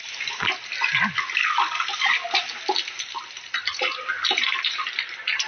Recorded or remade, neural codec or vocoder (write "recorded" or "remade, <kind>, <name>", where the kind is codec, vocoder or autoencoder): recorded